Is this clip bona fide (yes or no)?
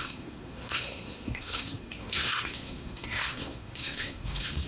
no